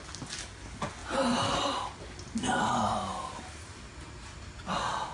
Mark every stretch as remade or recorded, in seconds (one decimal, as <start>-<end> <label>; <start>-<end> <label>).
0.0-5.1 recorded